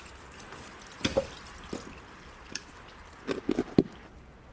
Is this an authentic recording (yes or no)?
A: yes